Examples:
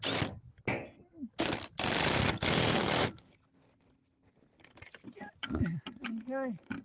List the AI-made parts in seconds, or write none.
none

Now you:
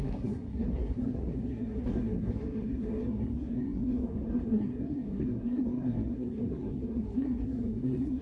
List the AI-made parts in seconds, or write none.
0.0-8.2 (codec, SNAC)

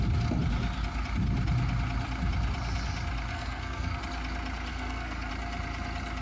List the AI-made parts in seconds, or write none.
3.3-4.0 (codec, SNAC); 4.7-5.3

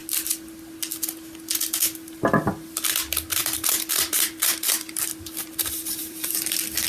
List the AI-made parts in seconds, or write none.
3.4-6.3 (vocoder, BigVGAN v2)